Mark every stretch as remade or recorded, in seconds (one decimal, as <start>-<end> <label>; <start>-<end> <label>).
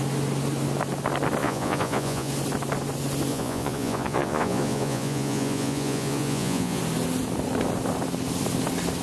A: 0.0-1.4 recorded; 1.4-2.3 remade; 2.3-3.3 recorded; 3.3-6.8 remade; 6.8-9.0 recorded